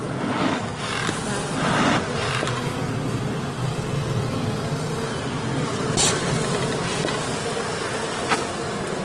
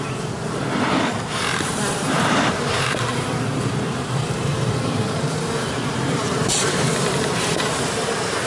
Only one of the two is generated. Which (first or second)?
second